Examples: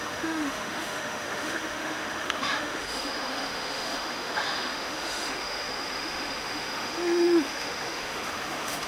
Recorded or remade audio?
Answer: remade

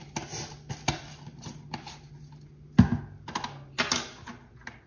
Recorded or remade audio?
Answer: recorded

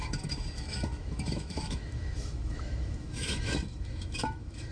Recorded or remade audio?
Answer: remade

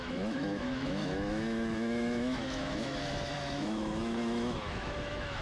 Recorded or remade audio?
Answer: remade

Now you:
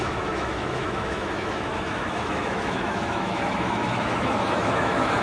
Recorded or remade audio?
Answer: remade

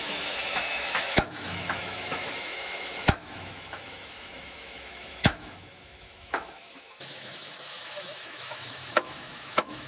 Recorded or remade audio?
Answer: remade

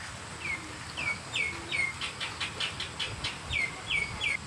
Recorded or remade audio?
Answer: recorded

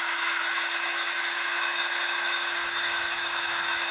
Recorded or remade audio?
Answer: remade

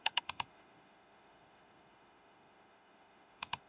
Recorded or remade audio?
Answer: remade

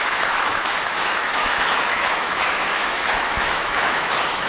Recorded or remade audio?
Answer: remade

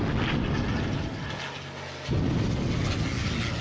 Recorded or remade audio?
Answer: recorded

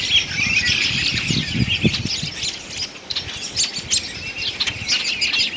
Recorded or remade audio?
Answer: recorded